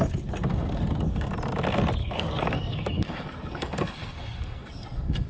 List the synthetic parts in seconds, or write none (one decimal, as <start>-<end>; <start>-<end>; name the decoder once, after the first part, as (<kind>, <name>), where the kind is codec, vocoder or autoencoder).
0.5-1.3 (codec, SNAC); 2.0-5.3